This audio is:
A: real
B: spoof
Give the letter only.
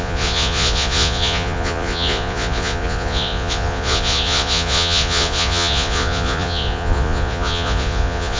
B